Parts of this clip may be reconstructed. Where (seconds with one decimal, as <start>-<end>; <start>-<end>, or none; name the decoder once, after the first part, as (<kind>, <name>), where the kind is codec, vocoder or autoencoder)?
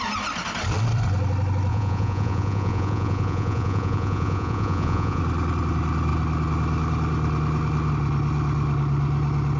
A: 1.7-5.2 (vocoder, Vocos)